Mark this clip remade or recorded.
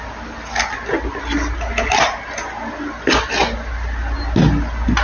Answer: recorded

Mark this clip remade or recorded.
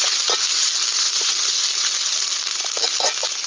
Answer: recorded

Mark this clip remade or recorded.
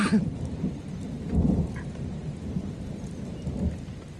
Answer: recorded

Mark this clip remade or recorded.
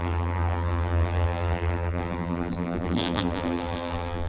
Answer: remade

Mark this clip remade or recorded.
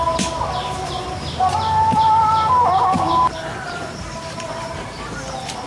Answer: remade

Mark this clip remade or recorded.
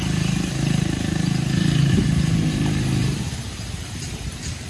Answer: remade